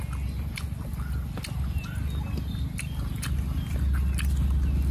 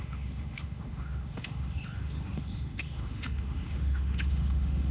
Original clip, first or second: first